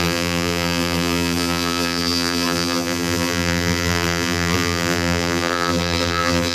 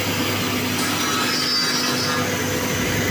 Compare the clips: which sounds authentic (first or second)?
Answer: second